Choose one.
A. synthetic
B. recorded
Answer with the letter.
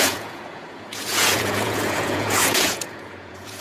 A